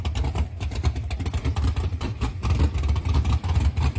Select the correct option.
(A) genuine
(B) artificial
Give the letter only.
B